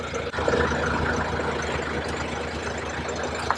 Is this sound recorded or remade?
recorded